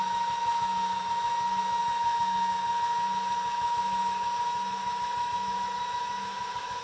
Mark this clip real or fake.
fake